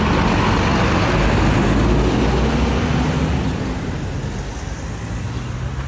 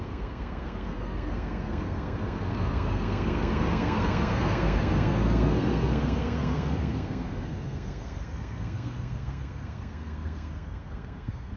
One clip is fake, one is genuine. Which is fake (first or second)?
second